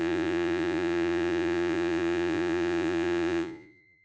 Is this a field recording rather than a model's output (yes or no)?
no